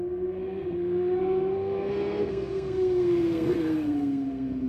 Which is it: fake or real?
fake